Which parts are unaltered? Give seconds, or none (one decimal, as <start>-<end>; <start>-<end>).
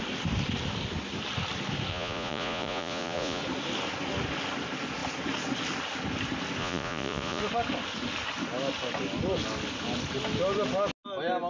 0.0-1.9; 3.4-6.6; 7.4-11.5